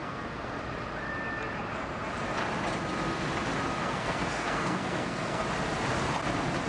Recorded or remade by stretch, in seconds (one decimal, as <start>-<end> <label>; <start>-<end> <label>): 0.0-0.6 remade; 0.6-3.8 recorded; 3.8-5.4 remade; 5.4-6.7 recorded